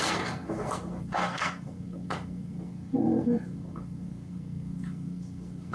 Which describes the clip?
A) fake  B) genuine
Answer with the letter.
A